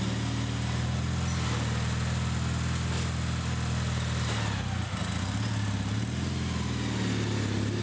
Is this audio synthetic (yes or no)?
no